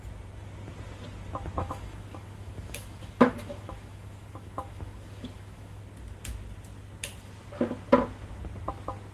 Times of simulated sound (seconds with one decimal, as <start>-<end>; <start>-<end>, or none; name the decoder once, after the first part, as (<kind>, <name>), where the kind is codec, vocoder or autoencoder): 1.6-5.8 (autoencoder, DAC-VAE)